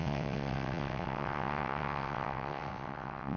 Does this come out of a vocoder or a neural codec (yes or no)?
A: yes